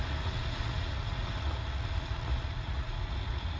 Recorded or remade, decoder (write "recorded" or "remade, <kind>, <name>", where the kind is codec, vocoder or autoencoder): remade, vocoder, Vocos